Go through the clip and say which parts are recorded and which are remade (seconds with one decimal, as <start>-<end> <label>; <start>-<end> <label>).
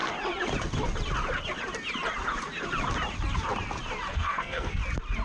0.0-4.1 recorded; 4.1-4.8 remade; 4.8-5.2 recorded